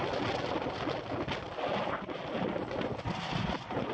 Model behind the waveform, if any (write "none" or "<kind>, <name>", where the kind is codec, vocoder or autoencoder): none